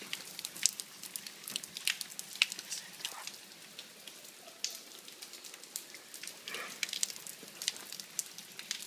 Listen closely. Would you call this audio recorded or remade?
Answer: recorded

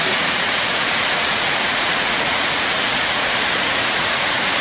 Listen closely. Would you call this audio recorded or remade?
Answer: remade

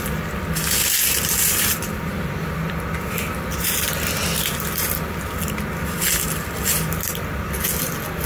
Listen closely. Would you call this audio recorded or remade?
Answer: recorded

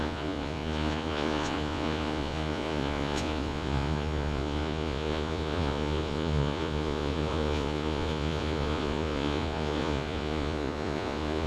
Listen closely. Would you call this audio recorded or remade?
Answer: remade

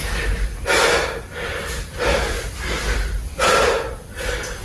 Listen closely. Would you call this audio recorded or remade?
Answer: recorded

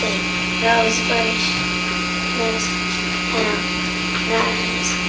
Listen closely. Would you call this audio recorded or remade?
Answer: recorded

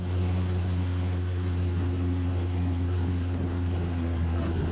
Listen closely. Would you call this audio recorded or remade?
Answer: remade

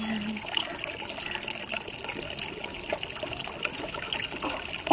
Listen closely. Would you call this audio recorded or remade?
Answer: recorded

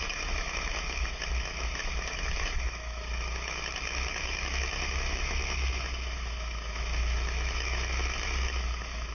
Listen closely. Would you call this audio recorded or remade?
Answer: remade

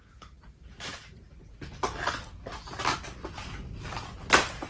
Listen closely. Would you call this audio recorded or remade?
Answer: recorded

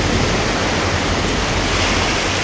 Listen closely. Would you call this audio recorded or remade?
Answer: recorded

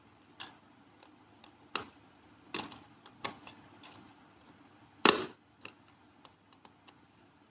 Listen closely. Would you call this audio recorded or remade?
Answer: recorded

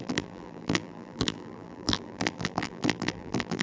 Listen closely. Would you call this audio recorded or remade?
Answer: remade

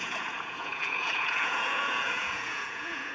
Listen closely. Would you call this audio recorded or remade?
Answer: remade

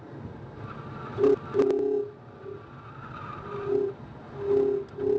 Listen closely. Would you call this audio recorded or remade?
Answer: recorded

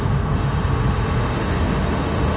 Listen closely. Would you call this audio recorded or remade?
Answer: remade